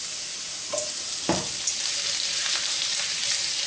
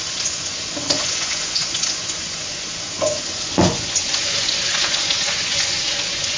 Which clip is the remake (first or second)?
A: second